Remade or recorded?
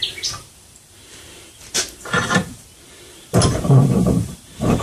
remade